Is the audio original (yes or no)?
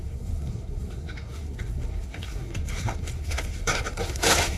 no